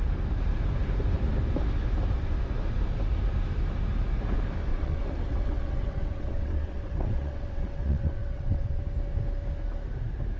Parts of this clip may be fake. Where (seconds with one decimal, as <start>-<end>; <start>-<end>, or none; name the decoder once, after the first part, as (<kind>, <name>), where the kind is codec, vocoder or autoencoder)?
4.7-8.8 (vocoder, WaveNeXt)